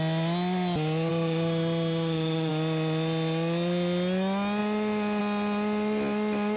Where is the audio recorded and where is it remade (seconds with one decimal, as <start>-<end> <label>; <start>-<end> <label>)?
0.0-1.1 recorded; 1.1-2.5 remade; 2.5-6.6 recorded